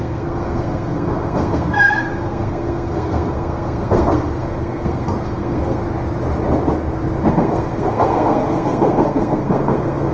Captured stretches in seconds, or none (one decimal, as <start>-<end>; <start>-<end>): 5.8-7.3